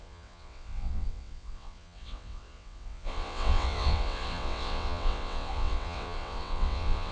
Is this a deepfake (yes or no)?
yes